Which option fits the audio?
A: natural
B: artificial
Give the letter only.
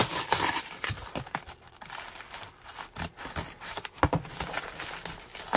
A